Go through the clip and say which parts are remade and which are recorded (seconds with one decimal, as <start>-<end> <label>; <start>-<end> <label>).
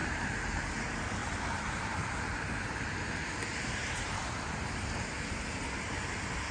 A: 0.0-0.6 remade; 0.6-1.2 recorded; 1.2-2.8 remade; 2.8-3.5 recorded; 3.5-6.0 remade; 6.0-6.5 recorded